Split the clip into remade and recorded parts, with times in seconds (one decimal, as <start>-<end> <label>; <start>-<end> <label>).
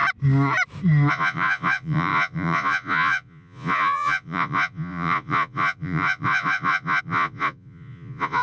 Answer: 0.0-1.1 recorded; 1.1-8.4 remade